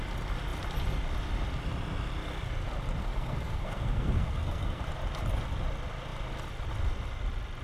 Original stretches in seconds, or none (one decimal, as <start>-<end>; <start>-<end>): 0.0-3.0; 4.8-7.6